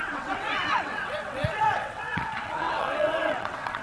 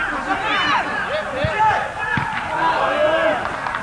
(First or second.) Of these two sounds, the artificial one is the first